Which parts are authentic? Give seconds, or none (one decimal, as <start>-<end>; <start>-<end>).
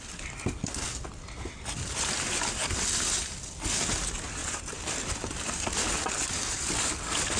0.0-4.4; 5.7-7.4